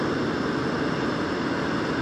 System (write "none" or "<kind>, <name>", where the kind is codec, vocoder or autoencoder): none